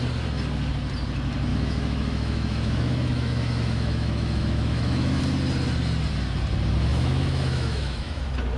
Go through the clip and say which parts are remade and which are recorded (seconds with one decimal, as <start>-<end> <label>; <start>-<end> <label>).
0.0-1.5 recorded; 1.5-5.2 remade; 5.2-6.9 recorded; 6.9-8.2 remade; 8.2-8.6 recorded